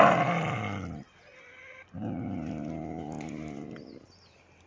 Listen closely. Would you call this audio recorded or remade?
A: recorded